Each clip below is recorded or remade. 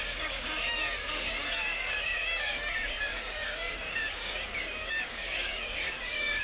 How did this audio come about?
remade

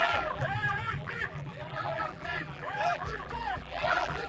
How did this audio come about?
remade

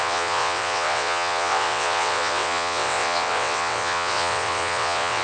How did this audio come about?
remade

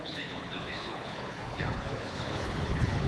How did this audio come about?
remade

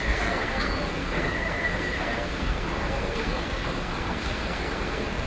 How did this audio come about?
remade